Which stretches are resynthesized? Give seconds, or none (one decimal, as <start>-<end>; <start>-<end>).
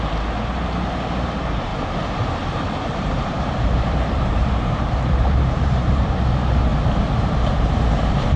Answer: 0.0-6.7; 7.2-8.4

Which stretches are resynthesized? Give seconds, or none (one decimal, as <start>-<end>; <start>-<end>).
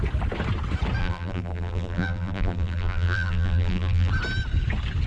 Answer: 1.0-4.1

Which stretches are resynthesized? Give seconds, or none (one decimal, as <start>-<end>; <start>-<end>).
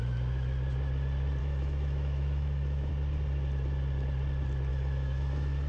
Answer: 1.4-2.9; 4.7-5.7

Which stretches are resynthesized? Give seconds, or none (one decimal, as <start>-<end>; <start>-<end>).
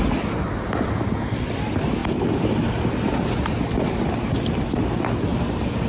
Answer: none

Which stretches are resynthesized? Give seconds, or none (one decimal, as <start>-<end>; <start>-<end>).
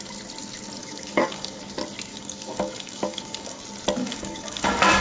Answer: 0.8-1.6; 2.1-3.6; 4.0-5.0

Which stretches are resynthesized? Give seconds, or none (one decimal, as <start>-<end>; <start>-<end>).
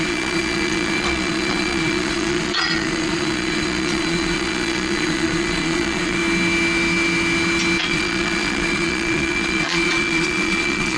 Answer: 0.0-6.2; 7.8-11.0